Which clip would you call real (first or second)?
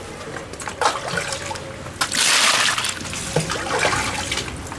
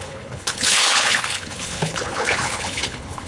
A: first